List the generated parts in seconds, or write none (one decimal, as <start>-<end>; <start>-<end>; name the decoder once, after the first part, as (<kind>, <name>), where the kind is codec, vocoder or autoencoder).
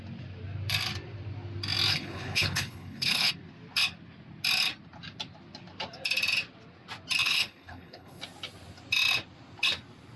1.9-3.3 (codec, HILCodec); 7.2-8.2